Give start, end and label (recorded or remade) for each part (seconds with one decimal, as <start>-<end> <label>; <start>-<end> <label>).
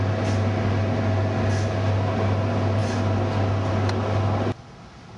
0.0-5.2 recorded